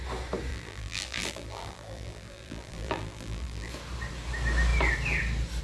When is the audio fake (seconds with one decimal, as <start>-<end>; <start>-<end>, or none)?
0.5-3.7